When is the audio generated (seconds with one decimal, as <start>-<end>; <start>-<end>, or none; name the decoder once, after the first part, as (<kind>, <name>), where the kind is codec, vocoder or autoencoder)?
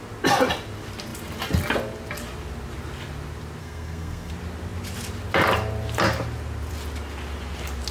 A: 3.6-4.3 (codec, SNAC)